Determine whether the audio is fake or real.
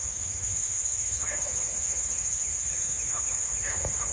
fake